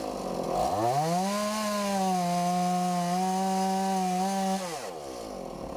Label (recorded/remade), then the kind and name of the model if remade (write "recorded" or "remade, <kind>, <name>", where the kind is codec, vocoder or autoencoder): recorded